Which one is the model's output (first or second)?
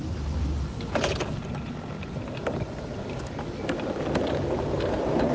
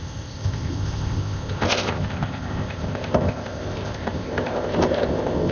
second